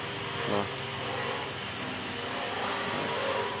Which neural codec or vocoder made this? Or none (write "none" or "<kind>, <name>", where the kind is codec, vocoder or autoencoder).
none